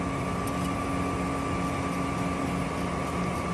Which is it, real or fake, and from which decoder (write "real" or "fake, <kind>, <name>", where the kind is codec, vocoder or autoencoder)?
real